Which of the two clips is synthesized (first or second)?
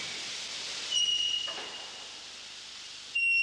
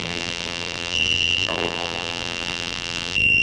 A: second